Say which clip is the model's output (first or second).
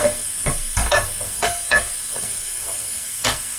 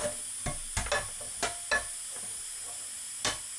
first